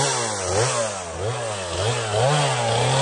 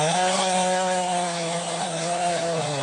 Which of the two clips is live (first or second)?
first